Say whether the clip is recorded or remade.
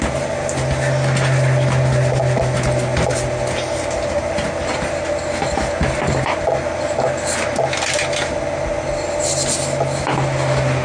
recorded